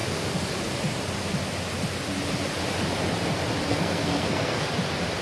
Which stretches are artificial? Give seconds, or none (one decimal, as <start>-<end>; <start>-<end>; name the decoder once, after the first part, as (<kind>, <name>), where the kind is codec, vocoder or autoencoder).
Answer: 3.7-4.7 (codec, SNAC)